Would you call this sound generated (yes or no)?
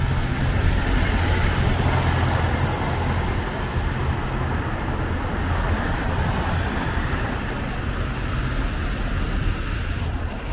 no